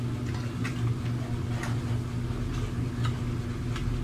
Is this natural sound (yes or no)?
yes